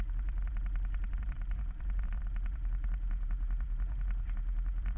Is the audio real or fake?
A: fake